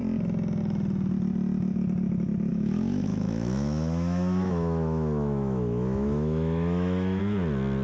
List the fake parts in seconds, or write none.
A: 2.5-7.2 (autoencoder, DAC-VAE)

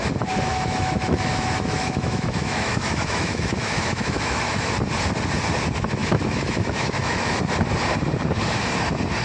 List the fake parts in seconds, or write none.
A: 0.5-4.7 (autoencoder, DAC-VAE); 6.0-7.3

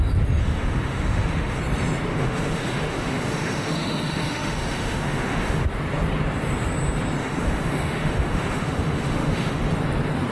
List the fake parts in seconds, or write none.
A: 0.4-1.6 (autoencoder, DAC-VAE); 2.1-5.6; 7.2-9.7

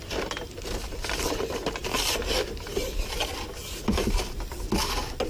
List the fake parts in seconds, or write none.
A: none